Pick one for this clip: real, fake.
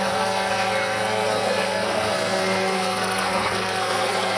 fake